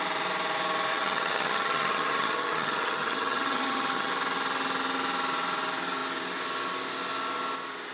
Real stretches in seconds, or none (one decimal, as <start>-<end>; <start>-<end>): 0.0-0.9; 4.1-7.9